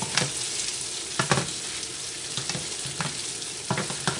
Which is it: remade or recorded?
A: recorded